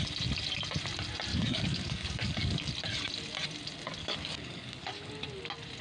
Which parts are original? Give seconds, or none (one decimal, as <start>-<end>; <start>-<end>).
0.0-1.3; 2.7-4.0; 5.1-5.8